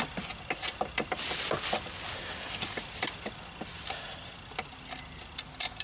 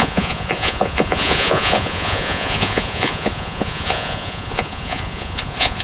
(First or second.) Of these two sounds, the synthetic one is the second